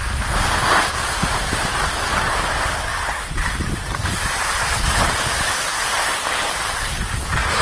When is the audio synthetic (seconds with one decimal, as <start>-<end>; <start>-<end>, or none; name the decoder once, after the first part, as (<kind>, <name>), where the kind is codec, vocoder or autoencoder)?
2.9-6.9 (vocoder, BigVGAN v2)